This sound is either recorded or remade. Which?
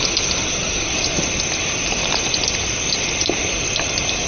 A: recorded